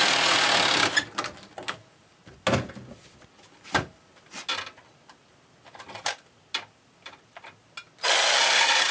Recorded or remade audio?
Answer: recorded